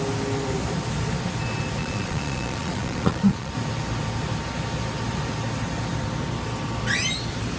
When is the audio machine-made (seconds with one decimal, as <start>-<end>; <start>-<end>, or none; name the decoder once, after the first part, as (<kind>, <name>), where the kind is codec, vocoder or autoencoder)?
1.8-3.5 (vocoder, Vocos)